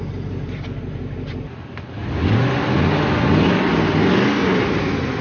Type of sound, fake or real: real